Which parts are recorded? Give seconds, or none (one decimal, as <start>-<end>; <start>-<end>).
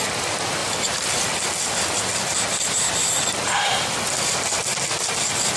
0.0-5.6